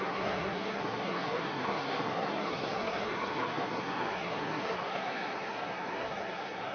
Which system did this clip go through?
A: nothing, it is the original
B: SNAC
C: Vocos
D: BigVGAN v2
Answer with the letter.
B